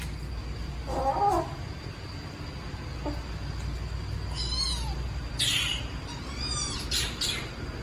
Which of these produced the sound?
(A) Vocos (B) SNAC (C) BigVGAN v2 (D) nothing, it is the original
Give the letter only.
D